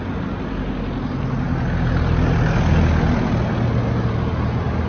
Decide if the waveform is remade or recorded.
recorded